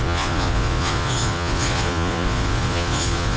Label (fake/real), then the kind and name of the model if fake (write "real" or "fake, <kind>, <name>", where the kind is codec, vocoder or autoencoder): fake, vocoder, Vocos